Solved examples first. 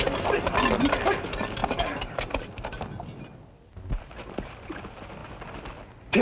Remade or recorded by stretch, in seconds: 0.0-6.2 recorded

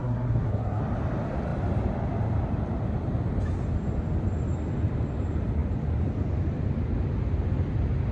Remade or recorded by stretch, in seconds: 0.0-0.8 remade; 0.8-8.1 recorded

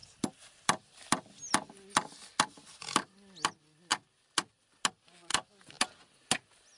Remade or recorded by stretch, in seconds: 0.0-6.8 recorded

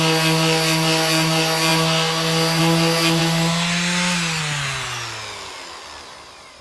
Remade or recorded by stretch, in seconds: 0.0-6.6 recorded

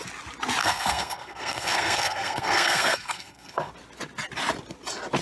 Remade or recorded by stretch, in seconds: 0.0-0.6 recorded; 0.6-3.7 remade; 3.7-5.2 recorded